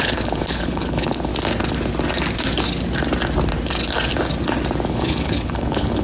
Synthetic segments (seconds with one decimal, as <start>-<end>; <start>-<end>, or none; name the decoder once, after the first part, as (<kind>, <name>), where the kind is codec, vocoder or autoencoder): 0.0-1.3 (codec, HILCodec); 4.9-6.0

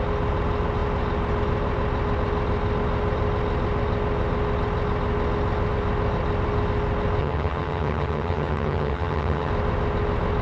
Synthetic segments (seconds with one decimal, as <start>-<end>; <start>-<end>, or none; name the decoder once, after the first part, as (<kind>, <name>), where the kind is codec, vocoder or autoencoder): 7.2-9.5 (vocoder, HiFi-GAN)

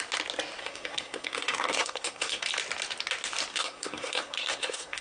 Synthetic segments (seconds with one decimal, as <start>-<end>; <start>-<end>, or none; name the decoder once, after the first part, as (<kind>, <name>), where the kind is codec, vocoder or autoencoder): 0.6-2.4 (codec, SNAC); 3.5-5.0